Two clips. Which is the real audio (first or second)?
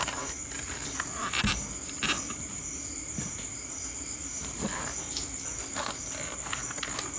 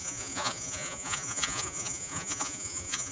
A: first